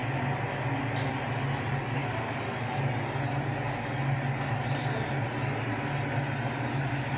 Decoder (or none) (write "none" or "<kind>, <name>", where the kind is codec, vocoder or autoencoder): none